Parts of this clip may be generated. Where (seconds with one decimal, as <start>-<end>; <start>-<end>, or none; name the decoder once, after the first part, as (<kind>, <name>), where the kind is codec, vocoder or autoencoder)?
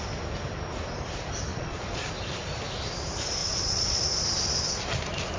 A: 1.5-2.1 (vocoder, Vocos); 3.4-4.0